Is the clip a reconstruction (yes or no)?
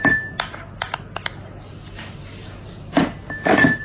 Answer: no